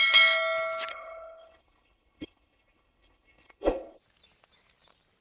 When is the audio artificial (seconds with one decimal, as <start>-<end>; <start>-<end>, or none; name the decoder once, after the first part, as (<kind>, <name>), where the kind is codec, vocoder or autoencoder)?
0.9-4.0 (codec, HILCodec)